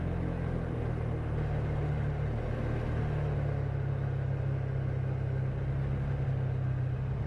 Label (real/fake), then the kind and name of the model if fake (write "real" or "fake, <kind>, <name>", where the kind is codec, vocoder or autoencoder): real